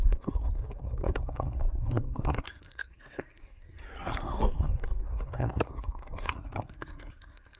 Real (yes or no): no